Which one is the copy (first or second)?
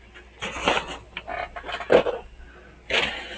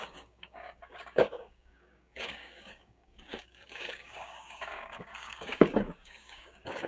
second